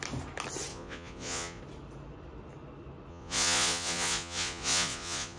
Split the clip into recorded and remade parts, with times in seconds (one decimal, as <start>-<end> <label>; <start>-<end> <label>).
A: 0.0-0.7 recorded; 0.7-1.6 remade; 1.6-3.1 recorded; 3.1-5.4 remade